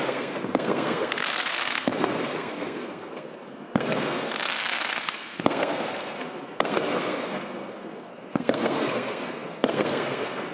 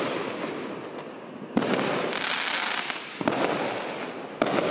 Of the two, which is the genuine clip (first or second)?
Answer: second